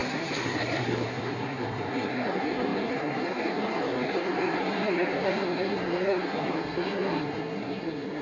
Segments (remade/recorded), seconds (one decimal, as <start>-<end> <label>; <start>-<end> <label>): 0.0-8.2 remade